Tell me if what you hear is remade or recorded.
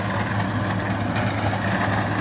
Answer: recorded